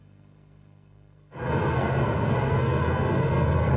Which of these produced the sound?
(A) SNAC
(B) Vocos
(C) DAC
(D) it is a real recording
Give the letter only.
A